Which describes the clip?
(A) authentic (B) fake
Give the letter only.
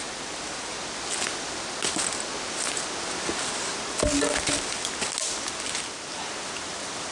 A